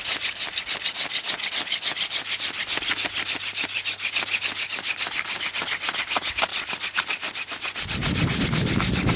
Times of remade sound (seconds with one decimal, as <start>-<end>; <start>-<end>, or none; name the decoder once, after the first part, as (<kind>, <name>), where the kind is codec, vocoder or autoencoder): none

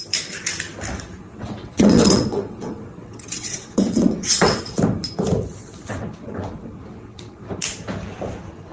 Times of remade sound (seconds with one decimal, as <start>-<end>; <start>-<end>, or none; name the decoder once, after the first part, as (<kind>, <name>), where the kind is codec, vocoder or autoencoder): 1.3-4.8 (vocoder, WaveNeXt); 5.6-7.5

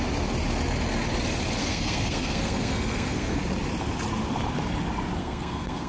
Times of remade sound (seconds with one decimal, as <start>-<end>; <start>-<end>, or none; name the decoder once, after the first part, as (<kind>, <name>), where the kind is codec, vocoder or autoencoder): 1.6-3.4 (codec, SNAC); 5.2-5.9

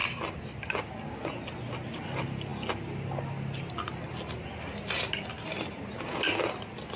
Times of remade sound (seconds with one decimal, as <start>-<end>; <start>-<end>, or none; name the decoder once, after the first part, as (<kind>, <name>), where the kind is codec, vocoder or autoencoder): none

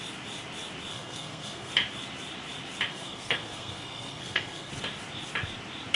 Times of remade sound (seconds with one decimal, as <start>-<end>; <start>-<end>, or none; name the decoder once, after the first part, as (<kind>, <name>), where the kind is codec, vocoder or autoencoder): 0.9-1.7 (codec, SNAC); 2.9-4.7